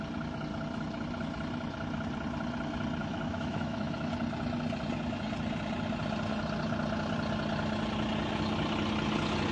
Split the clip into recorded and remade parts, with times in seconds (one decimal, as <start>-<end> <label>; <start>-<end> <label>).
0.0-3.0 recorded; 3.0-4.1 remade; 4.1-9.5 recorded